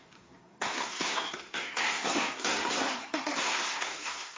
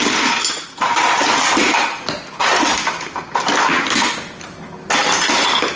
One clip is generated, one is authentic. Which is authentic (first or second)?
second